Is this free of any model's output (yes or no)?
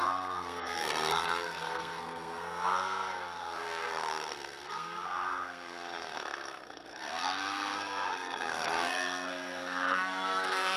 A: no